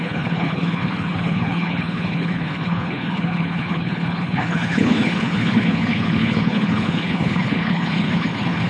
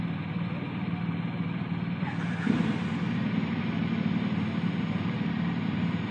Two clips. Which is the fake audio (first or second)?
first